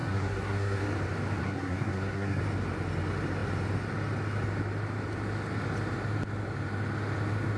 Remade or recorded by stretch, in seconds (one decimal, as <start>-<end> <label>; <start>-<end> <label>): 0.0-0.9 remade; 0.9-1.4 recorded; 1.4-2.4 remade; 2.4-7.6 recorded